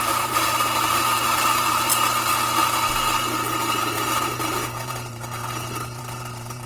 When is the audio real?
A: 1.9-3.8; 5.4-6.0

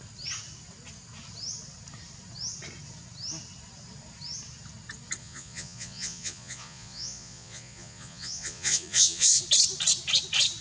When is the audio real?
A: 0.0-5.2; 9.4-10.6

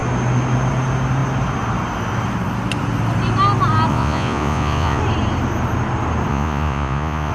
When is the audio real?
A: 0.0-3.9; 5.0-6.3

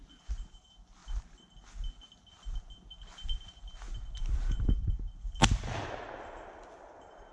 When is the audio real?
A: 0.0-7.3

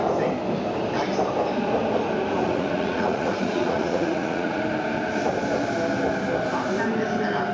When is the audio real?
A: 0.0-2.4; 4.6-7.5